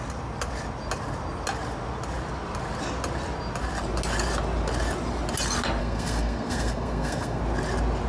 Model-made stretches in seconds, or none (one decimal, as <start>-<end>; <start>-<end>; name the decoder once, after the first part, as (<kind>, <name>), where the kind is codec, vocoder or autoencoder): 5.8-7.4 (codec, SNAC)